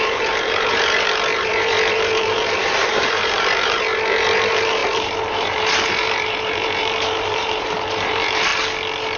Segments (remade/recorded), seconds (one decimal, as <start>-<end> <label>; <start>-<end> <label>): 0.0-8.5 remade; 8.5-9.2 recorded